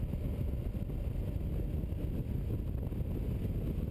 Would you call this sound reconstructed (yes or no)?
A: no